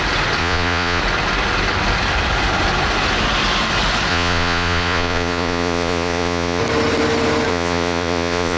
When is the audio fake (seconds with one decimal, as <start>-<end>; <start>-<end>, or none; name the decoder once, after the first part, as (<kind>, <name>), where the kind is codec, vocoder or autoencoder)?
0.4-1.0 (vocoder, Vocos); 4.1-6.6; 7.5-8.6